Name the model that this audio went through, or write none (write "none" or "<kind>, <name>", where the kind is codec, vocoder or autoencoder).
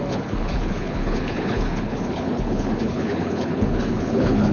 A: codec, HILCodec